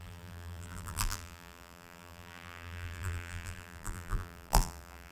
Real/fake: fake